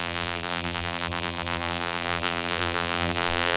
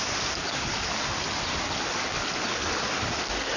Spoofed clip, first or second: first